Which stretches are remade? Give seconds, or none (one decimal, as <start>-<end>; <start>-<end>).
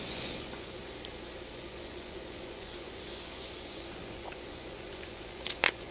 0.0-0.8; 1.5-5.9